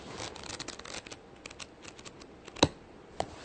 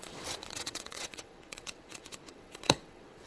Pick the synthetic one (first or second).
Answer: second